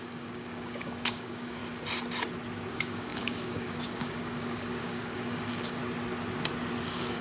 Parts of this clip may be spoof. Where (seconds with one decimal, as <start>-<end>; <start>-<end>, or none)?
0.0-1.6; 2.7-5.8; 6.8-7.2